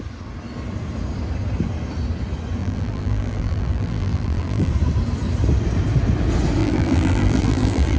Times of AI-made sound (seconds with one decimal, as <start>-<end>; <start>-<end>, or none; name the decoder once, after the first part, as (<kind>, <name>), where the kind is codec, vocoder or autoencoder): 2.6-4.7 (vocoder, BigVGAN v2); 6.6-8.0